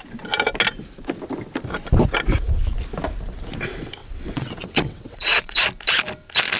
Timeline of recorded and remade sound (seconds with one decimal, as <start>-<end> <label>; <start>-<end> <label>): 0.0-4.0 recorded; 4.0-5.6 remade; 5.6-6.6 recorded